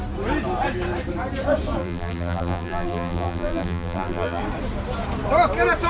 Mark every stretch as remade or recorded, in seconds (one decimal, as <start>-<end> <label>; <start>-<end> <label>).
0.0-1.8 recorded; 1.8-4.4 remade; 4.4-5.9 recorded